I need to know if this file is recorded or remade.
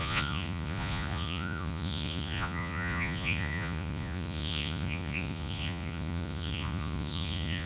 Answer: remade